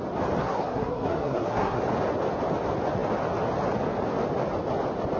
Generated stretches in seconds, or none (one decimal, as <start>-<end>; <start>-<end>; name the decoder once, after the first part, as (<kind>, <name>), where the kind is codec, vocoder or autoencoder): 0.4-1.8 (codec, SNAC)